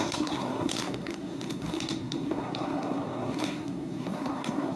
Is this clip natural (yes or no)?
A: no